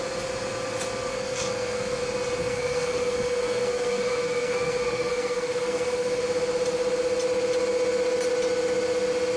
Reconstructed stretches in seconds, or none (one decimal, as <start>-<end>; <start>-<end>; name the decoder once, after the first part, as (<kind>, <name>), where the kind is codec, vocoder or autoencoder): 1.1-2.0 (codec, SNAC); 2.4-6.2